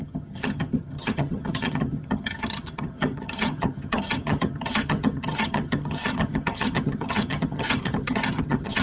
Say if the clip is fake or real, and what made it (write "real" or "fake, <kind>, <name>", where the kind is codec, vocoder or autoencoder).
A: fake, vocoder, HiFi-GAN